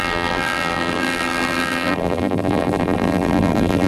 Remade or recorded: remade